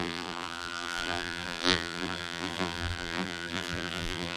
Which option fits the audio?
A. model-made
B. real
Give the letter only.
A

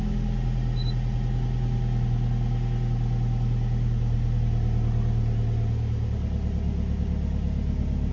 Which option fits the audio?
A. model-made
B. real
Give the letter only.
B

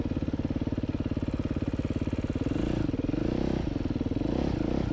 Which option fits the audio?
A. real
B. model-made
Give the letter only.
A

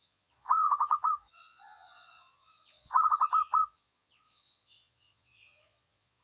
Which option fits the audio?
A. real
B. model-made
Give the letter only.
B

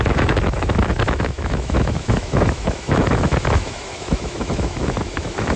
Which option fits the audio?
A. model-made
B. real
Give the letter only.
A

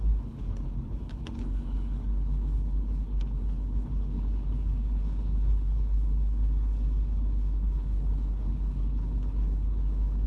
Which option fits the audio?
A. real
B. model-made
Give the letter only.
B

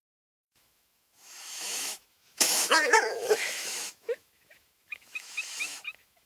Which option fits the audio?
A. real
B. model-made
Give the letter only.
B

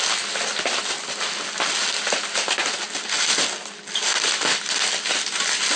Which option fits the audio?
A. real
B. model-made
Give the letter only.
A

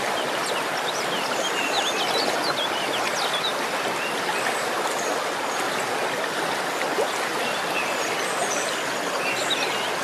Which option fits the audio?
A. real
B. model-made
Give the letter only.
A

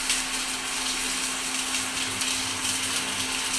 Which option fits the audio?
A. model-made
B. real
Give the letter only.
B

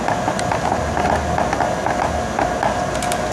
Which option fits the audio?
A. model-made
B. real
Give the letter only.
B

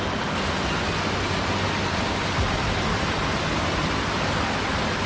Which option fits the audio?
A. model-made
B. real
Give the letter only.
B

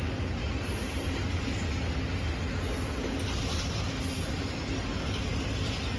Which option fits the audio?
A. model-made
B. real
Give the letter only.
B